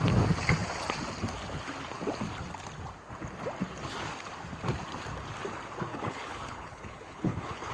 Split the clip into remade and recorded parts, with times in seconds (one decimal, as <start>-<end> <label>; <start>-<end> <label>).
0.0-5.9 recorded; 5.9-7.7 remade

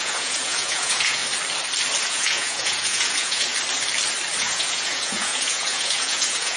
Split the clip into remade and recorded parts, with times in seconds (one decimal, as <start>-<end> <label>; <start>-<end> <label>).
0.0-1.2 remade; 1.2-2.0 recorded; 2.0-3.5 remade; 3.5-4.4 recorded; 4.4-6.6 remade